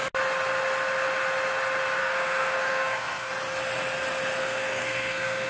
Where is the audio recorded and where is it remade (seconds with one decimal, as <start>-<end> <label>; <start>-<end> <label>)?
0.0-2.0 recorded; 2.0-3.3 remade; 3.3-4.4 recorded; 4.4-5.5 remade

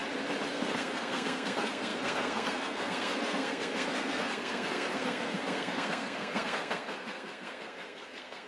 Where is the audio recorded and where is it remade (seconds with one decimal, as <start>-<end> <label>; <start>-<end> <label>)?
0.0-0.5 recorded; 0.5-8.5 remade

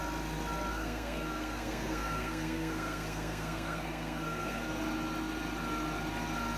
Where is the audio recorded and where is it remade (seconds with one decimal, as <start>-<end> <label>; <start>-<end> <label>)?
0.0-0.7 recorded; 0.7-4.7 remade; 4.7-6.6 recorded

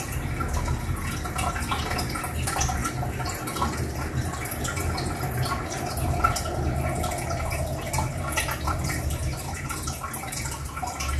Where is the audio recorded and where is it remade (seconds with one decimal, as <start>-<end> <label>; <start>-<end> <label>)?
0.0-11.2 recorded

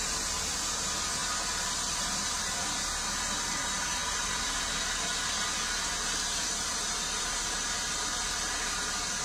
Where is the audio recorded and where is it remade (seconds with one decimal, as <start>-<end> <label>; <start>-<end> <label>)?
0.0-9.2 recorded

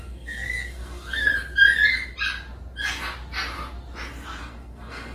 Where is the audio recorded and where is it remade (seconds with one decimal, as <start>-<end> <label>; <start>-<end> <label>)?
0.0-1.3 remade; 1.3-4.4 recorded; 4.4-5.1 remade

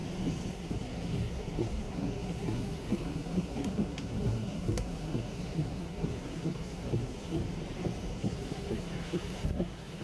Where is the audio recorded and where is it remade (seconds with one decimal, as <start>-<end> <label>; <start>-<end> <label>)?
0.0-0.5 recorded; 0.5-7.4 remade; 7.4-8.1 recorded; 8.1-10.0 remade

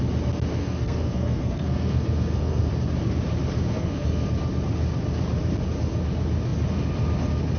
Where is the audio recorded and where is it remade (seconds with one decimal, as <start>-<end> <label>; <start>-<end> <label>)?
0.0-0.6 recorded; 0.6-2.7 remade; 2.7-3.7 recorded; 3.7-4.3 remade; 4.3-7.6 recorded